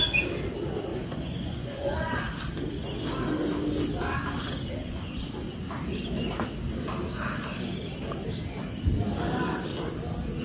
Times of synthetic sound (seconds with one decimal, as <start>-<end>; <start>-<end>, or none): 0.9-2.2; 4.8-5.3